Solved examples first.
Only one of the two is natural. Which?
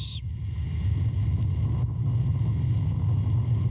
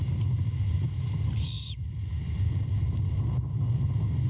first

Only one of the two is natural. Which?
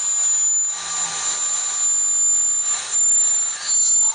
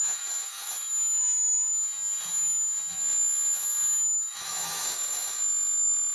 first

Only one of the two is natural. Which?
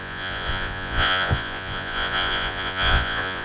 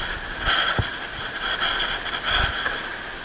second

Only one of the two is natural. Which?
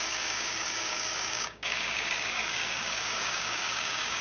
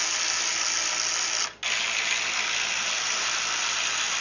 second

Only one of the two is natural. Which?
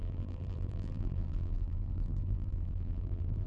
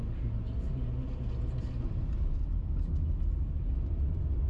second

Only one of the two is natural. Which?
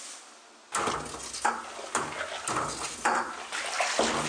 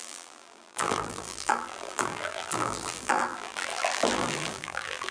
first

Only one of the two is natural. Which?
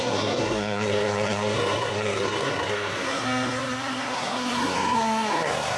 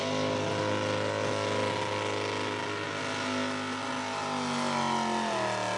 second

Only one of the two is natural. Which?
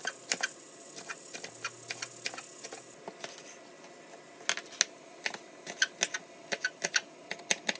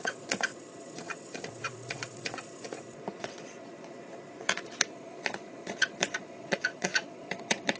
first